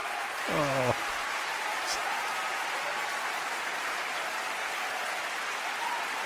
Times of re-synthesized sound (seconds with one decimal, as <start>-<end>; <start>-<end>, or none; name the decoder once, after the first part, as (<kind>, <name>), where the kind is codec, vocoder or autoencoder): 0.0-2.7 (vocoder, BigVGAN v2)